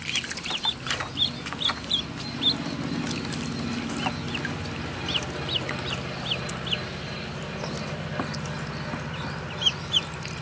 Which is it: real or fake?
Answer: real